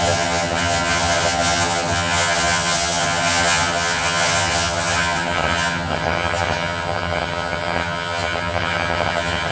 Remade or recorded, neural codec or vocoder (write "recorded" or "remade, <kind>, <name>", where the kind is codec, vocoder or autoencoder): remade, vocoder, HiFi-GAN